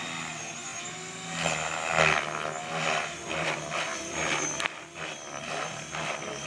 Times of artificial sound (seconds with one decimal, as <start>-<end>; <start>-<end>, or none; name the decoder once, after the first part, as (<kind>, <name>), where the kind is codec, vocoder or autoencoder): none